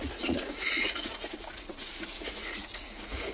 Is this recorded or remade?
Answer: remade